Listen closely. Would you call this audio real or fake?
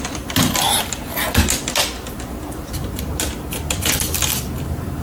real